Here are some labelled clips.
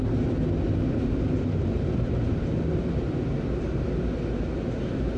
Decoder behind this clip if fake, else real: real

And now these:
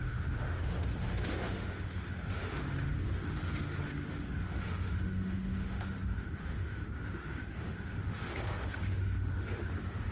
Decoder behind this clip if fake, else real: fake, autoencoder, DAC-VAE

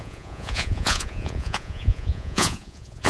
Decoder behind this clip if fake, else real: fake, vocoder, Vocos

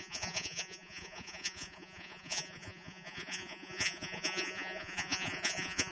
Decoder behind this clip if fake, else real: fake, vocoder, Vocos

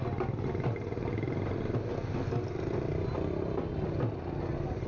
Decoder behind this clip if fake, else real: real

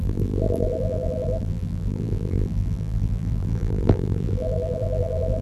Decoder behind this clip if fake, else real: fake, vocoder, BigVGAN v2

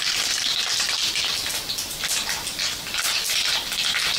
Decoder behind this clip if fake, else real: real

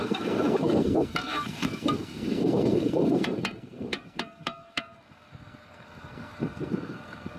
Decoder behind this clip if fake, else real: fake, codec, SNAC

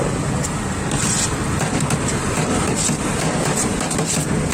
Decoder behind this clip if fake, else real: real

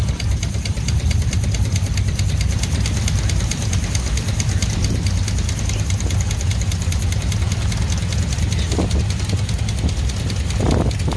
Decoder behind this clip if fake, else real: real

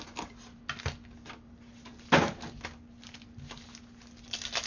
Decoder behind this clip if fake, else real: real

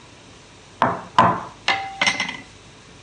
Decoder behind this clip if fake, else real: real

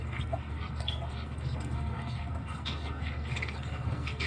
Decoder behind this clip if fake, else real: fake, codec, SNAC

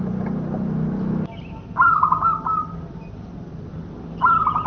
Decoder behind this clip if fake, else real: real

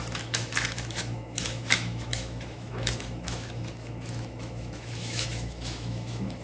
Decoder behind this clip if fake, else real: fake, autoencoder, DAC-VAE